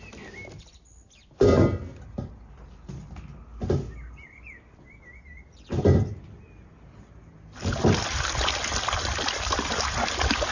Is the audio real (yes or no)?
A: yes